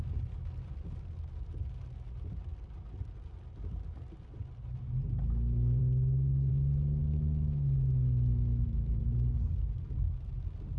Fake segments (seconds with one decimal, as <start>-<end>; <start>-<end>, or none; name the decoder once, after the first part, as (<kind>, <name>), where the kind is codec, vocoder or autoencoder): 7.0-9.0 (autoencoder, DAC-VAE)